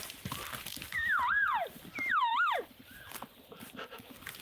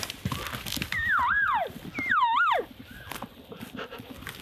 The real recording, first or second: second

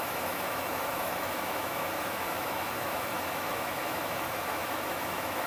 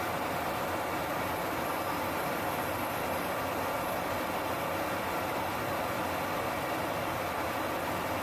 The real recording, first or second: second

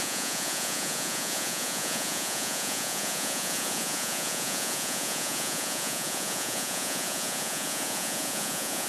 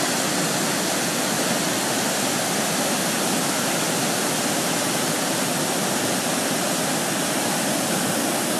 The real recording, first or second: second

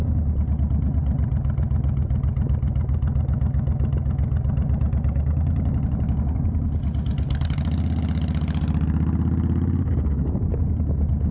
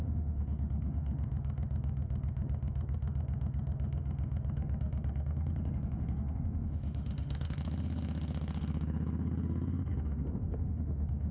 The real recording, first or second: first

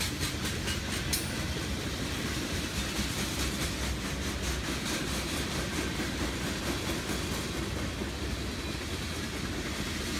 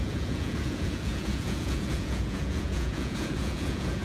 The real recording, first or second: first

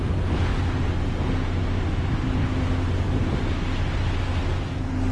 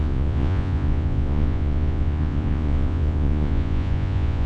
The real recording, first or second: first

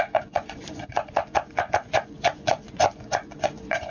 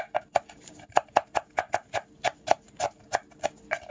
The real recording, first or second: second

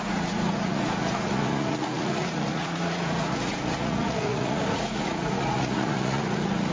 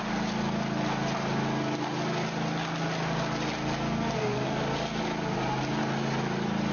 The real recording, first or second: second